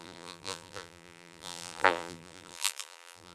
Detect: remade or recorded remade